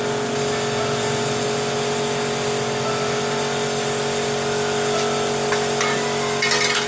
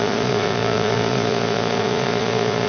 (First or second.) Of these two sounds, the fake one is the second